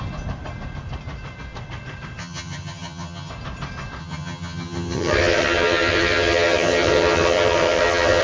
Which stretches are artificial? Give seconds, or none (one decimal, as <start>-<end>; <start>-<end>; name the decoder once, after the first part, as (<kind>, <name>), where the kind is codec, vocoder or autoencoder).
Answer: 2.2-3.3 (vocoder, HiFi-GAN); 4.0-8.2